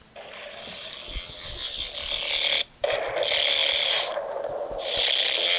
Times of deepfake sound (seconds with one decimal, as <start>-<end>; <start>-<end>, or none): none